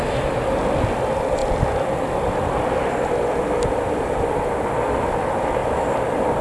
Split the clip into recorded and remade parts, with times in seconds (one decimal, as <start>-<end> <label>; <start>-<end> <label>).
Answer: 0.0-1.4 recorded; 1.4-4.3 remade; 4.3-5.6 recorded; 5.6-6.4 remade